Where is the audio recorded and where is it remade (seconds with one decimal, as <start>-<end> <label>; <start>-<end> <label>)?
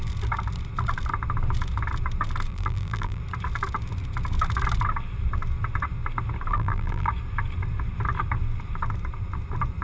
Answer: 0.0-2.5 recorded; 2.5-3.2 remade; 3.2-6.5 recorded; 6.5-7.1 remade; 7.1-9.8 recorded